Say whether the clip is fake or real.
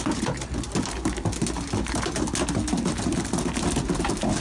real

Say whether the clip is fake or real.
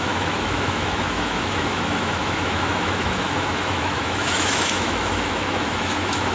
fake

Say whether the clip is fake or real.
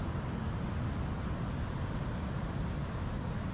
real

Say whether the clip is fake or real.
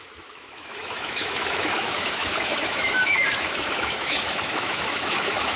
fake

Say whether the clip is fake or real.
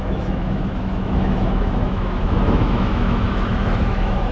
fake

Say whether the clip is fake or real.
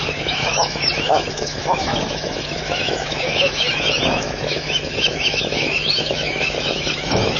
fake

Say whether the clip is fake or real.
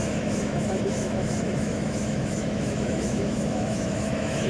fake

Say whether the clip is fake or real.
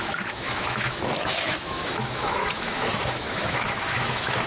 fake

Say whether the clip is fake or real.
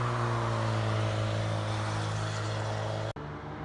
real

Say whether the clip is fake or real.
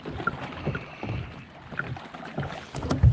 real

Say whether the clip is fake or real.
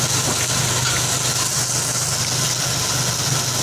real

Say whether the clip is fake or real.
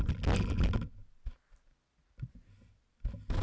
real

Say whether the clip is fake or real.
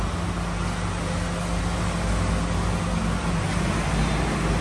real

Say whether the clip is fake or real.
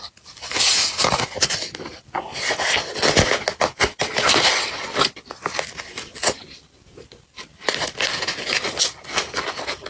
real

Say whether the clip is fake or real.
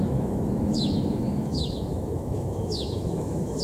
fake